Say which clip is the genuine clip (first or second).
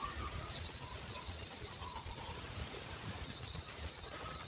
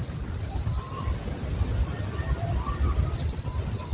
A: second